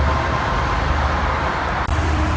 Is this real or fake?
fake